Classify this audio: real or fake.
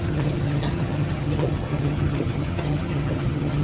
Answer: fake